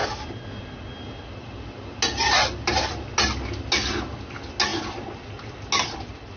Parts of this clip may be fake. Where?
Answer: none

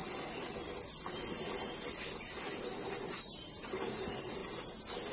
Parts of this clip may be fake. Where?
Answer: 3.1-4.4 (vocoder, BigVGAN v2)